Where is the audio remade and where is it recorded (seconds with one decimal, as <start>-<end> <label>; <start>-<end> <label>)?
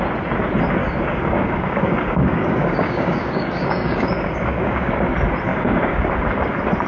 0.0-0.8 recorded; 0.8-4.9 remade; 4.9-5.5 recorded; 5.5-6.1 remade; 6.1-6.9 recorded